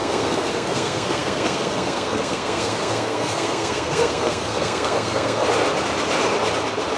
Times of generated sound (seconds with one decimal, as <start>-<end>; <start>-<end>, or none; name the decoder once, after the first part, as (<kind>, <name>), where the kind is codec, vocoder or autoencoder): 0.0-5.4 (codec, SNAC)